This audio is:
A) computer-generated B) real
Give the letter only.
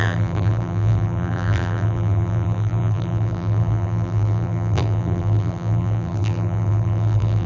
A